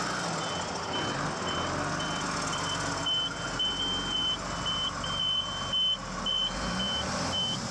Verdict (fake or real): real